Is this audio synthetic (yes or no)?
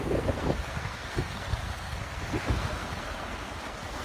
yes